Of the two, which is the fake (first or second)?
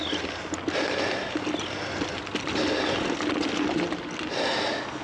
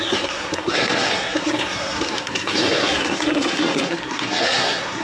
second